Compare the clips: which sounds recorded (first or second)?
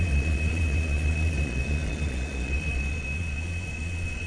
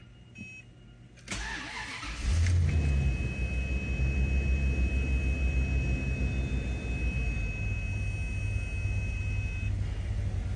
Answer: second